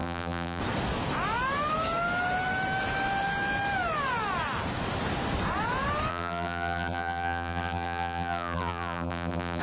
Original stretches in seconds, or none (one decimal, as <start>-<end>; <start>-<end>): 0.6-6.1